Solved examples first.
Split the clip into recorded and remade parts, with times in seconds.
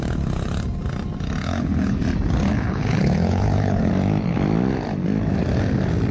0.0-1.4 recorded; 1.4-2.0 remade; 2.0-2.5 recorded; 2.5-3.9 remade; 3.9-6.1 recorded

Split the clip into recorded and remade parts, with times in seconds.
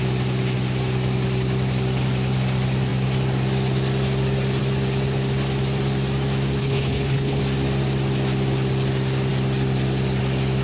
0.0-6.6 recorded; 6.6-7.4 remade; 7.4-10.6 recorded